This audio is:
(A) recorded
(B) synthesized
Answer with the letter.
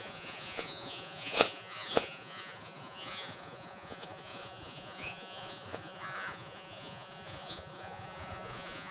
B